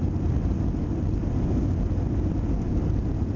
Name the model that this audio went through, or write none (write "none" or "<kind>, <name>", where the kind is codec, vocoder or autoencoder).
none